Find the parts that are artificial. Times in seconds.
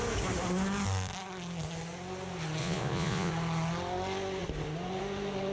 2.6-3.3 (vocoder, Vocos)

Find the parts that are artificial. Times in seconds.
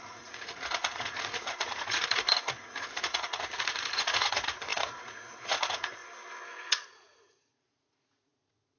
0.0-6.0 (vocoder, Vocos); 6.5-8.8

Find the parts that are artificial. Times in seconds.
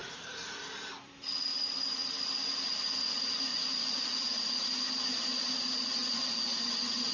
0.0-0.9 (vocoder, Vocos); 3.5-4.4